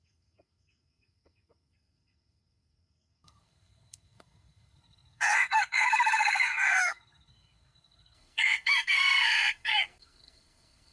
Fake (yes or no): yes